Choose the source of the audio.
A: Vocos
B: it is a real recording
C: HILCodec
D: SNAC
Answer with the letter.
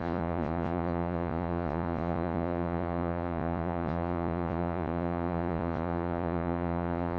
A